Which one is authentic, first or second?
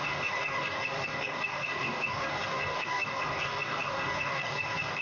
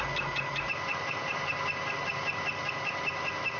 second